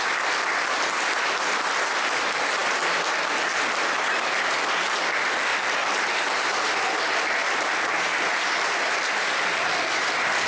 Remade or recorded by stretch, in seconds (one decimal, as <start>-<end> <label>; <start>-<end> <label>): 0.0-10.5 recorded